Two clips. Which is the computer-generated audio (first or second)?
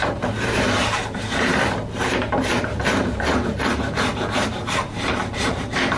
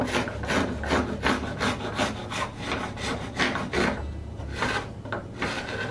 first